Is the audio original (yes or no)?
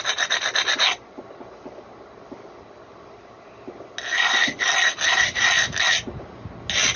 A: yes